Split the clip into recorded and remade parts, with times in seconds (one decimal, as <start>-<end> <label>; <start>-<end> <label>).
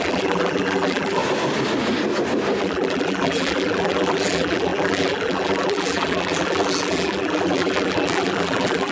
0.0-1.2 remade; 1.2-2.6 recorded; 2.6-8.9 remade